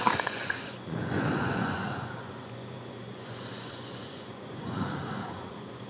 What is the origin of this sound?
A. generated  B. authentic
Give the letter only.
A